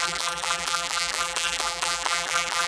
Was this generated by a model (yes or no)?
yes